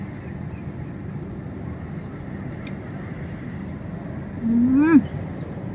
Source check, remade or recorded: recorded